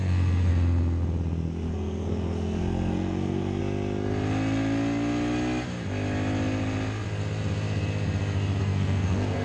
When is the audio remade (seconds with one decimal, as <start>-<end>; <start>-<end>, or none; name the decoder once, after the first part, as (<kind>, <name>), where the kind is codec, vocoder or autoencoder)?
0.0-0.5 (codec, SNAC); 1.7-3.6; 8.6-9.4